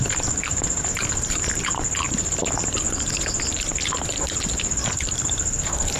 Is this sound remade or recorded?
remade